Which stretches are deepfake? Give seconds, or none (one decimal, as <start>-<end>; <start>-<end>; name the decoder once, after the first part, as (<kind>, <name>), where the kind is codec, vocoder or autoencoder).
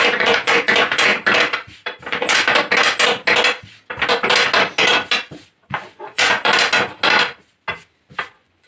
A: 0.0-1.1 (vocoder, Vocos); 2.1-2.5; 5.6-6.5; 8.2-8.7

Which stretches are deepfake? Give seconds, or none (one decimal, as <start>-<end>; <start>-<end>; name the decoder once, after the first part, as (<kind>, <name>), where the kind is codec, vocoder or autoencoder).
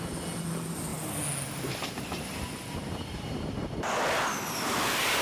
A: none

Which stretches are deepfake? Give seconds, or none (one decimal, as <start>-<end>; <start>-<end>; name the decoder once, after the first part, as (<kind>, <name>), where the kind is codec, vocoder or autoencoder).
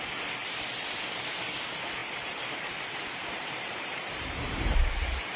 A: 0.4-1.5 (vocoder, BigVGAN v2); 2.0-5.4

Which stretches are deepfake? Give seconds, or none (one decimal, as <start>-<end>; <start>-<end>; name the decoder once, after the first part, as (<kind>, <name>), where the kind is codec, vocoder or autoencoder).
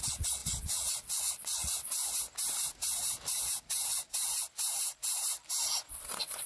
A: 0.0-2.0 (vocoder, Vocos); 5.9-6.5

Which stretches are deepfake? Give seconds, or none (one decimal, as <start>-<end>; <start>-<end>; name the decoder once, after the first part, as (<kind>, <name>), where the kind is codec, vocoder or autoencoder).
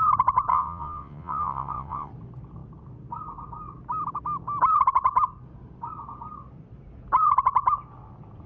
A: 0.5-2.1 (vocoder, WaveNeXt)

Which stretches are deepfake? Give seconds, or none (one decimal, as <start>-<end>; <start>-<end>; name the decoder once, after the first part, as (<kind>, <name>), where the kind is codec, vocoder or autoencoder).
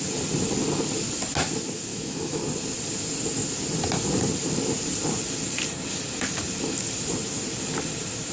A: 1.9-2.4 (autoencoder, DAC-VAE)